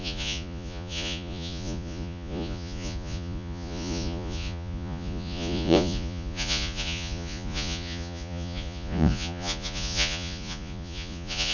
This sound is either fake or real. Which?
fake